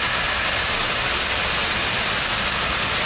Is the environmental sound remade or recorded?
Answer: recorded